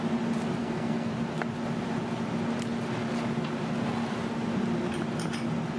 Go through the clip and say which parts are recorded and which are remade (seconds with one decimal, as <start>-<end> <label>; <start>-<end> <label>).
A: 0.0-0.6 recorded; 0.6-1.1 remade; 1.1-5.8 recorded